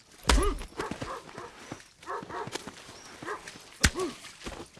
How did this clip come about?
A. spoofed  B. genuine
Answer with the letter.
B